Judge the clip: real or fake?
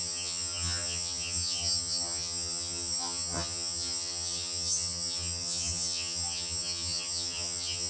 fake